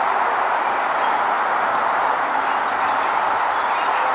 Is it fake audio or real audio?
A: real